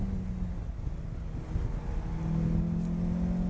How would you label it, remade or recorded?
recorded